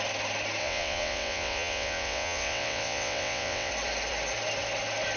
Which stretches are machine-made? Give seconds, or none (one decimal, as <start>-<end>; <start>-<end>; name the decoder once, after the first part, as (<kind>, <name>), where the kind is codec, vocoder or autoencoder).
0.6-3.7 (vocoder, WaveNeXt)